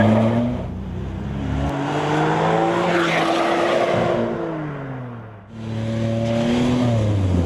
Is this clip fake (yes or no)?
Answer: no